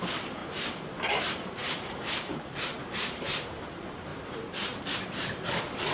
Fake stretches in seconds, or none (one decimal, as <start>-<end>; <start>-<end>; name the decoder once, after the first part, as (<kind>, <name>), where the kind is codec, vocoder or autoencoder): 0.0-5.9 (vocoder, BigVGAN v2)

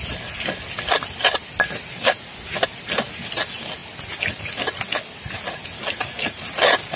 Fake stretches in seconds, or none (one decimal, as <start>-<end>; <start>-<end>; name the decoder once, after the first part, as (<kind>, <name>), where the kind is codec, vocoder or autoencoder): none